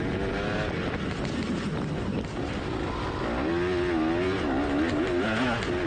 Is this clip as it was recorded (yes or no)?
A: yes